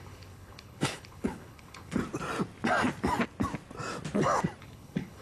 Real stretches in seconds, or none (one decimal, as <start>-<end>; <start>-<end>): 2.0-4.6